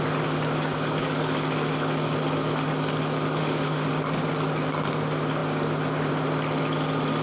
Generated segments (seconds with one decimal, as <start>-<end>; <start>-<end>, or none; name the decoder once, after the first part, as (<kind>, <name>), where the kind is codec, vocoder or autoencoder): 3.4-3.9 (autoencoder, DAC-VAE)